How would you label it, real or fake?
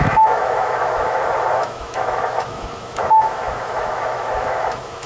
fake